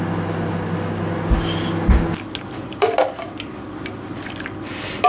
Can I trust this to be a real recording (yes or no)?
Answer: yes